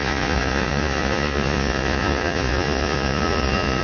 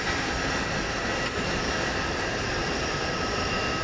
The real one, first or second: second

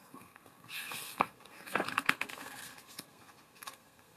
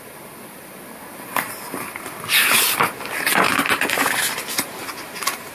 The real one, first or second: second